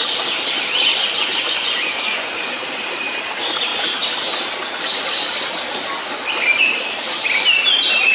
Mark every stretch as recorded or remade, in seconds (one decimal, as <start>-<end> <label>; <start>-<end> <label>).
0.0-0.9 recorded; 0.9-2.5 remade; 2.5-8.1 recorded